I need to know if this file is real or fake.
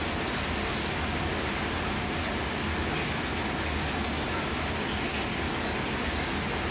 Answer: real